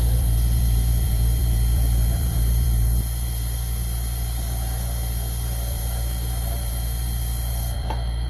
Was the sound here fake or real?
fake